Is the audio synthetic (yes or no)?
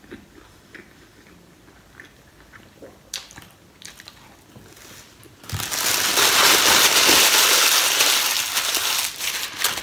no